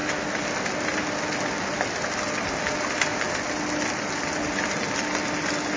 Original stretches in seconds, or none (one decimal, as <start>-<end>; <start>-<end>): 0.0-5.8